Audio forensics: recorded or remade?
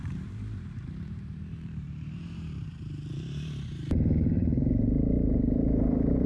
remade